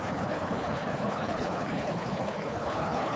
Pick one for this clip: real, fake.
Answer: fake